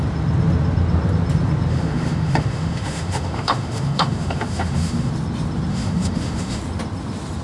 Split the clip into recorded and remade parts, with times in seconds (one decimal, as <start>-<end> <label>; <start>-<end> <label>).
0.0-1.7 recorded; 1.7-5.1 remade; 5.1-5.7 recorded; 5.7-6.6 remade; 6.6-7.4 recorded